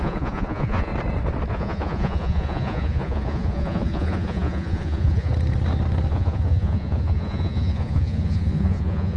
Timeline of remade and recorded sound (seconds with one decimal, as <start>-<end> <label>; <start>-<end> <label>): 0.0-0.9 remade; 0.9-1.5 recorded; 1.5-5.3 remade; 5.3-6.1 recorded; 6.1-9.2 remade